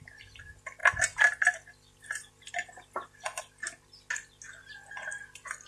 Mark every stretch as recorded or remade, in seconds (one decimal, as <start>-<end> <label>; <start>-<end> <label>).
0.0-5.7 recorded